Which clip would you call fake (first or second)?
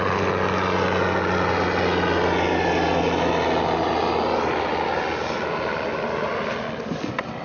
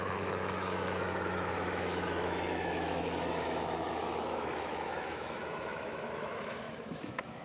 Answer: second